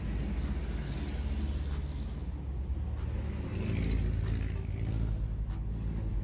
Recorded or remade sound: recorded